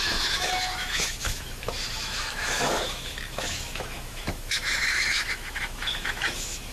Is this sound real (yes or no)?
no